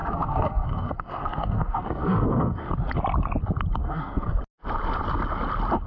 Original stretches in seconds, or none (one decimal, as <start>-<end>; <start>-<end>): 2.7-3.8; 4.4-5.9